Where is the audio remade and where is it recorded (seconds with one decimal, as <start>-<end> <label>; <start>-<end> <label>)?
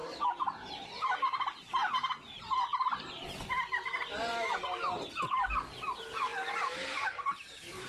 0.0-2.7 recorded; 2.7-5.2 remade; 5.2-7.9 recorded